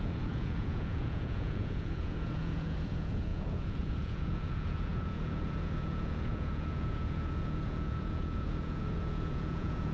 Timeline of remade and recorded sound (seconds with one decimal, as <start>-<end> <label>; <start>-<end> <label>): 0.0-9.9 remade